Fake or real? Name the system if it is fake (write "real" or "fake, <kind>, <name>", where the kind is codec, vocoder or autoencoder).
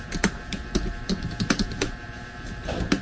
fake, vocoder, BigVGAN v2